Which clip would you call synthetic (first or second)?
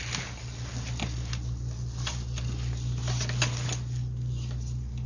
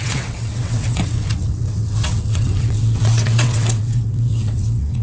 second